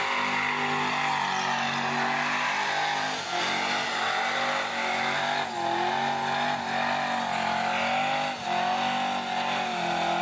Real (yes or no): yes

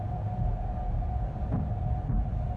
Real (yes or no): yes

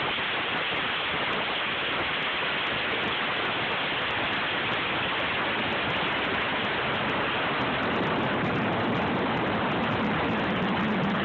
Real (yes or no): yes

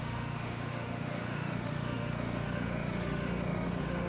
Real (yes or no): no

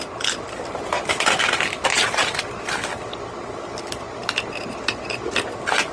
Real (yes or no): yes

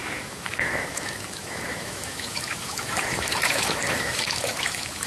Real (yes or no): no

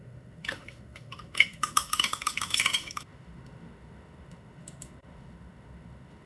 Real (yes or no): no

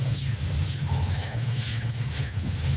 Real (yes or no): no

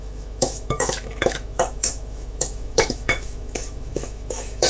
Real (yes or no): no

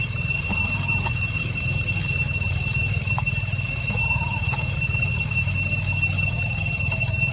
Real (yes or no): no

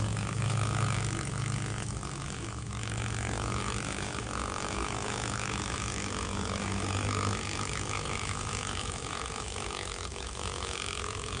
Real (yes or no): no